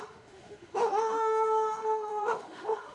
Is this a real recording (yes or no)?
no